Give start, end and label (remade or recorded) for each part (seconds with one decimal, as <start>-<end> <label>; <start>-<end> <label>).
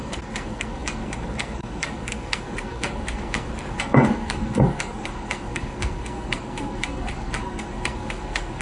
0.0-8.6 remade